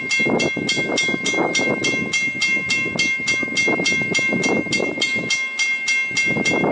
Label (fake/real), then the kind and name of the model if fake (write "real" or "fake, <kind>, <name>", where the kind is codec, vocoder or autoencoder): real